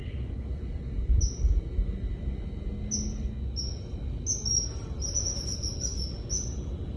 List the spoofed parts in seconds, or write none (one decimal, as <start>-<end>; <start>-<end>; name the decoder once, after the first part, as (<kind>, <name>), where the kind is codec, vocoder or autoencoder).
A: none